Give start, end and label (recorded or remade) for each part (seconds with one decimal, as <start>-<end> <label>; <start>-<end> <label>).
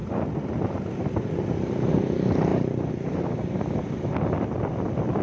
0.0-5.2 recorded